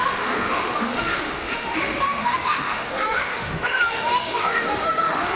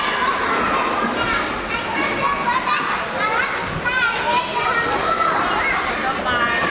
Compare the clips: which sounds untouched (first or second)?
second